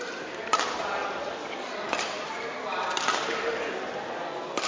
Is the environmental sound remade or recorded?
recorded